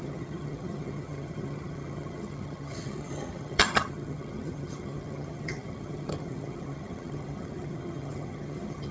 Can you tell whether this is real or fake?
fake